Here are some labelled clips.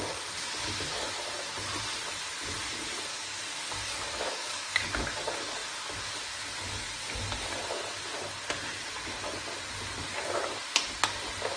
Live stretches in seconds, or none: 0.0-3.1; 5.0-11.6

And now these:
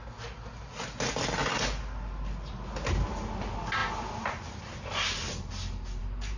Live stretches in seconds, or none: 0.0-6.4

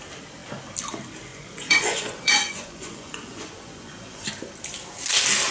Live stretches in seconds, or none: 0.0-1.3; 4.3-5.5

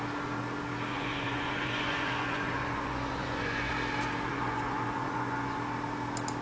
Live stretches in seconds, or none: 0.0-0.9; 3.7-4.3; 5.6-6.4

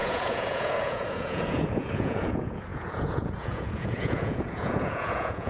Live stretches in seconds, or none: none

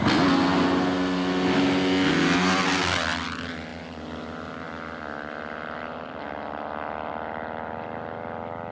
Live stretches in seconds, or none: 0.0-8.7

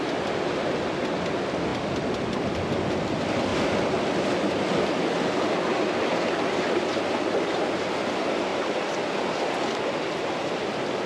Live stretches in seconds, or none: 0.0-11.1